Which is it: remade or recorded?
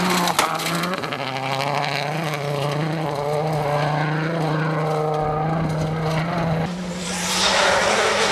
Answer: recorded